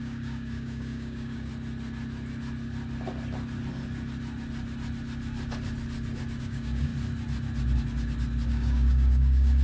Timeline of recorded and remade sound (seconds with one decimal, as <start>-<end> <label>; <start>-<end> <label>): 0.0-1.5 remade; 1.5-6.4 recorded; 6.4-6.9 remade; 6.9-8.5 recorded; 8.5-9.6 remade